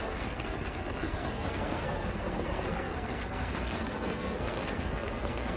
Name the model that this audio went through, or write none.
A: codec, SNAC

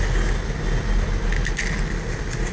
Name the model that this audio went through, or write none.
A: none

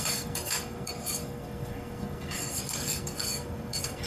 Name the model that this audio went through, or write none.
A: codec, SNAC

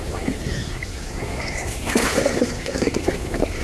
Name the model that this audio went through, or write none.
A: codec, SNAC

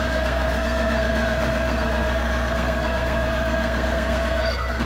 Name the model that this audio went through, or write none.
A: codec, SNAC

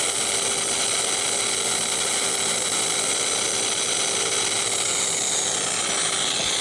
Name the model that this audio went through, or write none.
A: none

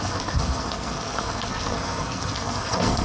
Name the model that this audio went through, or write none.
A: codec, SNAC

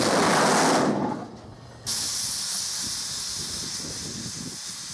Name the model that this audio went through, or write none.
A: none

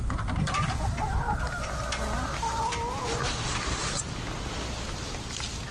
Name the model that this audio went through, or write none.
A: none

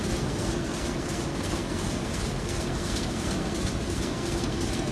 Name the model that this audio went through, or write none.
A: codec, SNAC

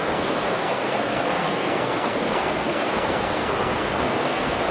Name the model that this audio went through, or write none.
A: codec, SNAC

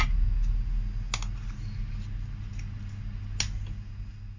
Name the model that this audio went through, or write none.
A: none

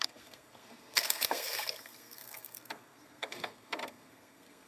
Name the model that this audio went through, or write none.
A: codec, SNAC